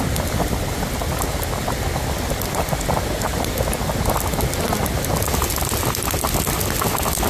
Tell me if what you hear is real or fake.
real